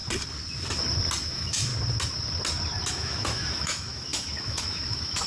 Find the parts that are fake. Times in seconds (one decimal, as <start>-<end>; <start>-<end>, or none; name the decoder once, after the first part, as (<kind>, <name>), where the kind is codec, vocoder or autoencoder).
1.2-1.7 (autoencoder, DAC-VAE); 2.9-5.3